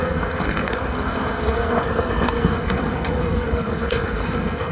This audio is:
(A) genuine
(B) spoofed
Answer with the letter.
B